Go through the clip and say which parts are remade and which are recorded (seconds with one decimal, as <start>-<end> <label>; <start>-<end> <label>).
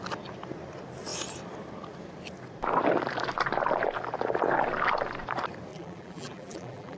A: 0.0-5.7 recorded; 5.7-7.0 remade